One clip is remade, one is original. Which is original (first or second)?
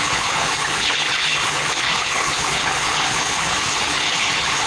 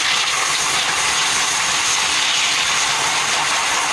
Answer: second